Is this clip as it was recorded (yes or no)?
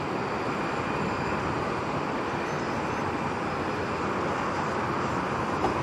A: yes